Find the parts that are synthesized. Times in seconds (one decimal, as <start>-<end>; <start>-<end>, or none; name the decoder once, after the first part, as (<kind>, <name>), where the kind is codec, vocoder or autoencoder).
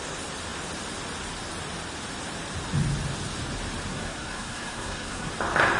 3.9-5.3 (codec, SNAC)